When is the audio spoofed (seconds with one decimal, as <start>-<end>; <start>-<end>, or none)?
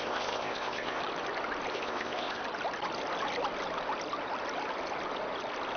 0.0-1.0; 1.7-2.4